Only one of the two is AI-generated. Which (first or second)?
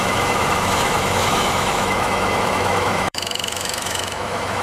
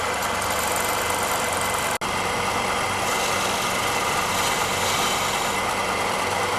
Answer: first